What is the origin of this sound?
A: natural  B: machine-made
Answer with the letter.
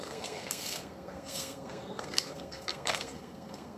B